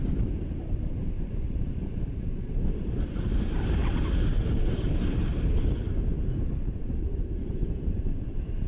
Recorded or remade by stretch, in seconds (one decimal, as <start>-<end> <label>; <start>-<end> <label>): 0.0-3.8 remade; 3.8-4.7 recorded; 4.7-5.3 remade; 5.3-6.8 recorded; 6.8-8.7 remade